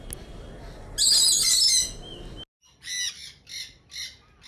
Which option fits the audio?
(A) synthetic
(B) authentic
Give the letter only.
B